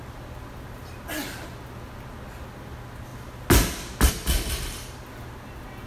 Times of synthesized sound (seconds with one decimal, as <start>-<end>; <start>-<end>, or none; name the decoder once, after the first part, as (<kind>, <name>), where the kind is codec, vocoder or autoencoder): none